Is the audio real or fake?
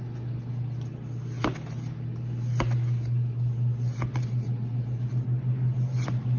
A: real